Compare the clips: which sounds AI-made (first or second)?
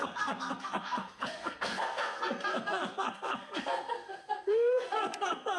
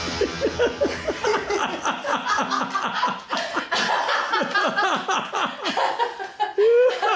first